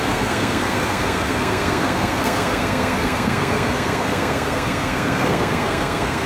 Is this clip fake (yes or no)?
yes